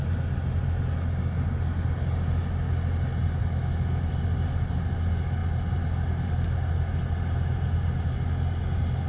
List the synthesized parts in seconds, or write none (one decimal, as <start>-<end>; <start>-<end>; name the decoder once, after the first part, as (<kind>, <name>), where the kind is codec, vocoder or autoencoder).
3.4-4.1 (autoencoder, DAC-VAE)